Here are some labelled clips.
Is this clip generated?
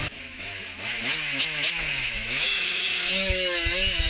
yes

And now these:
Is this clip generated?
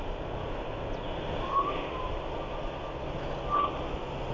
no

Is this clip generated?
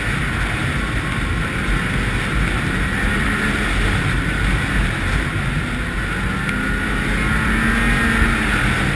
no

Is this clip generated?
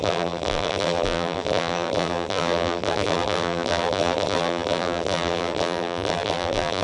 yes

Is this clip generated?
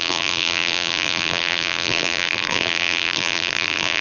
yes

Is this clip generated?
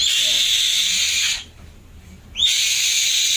no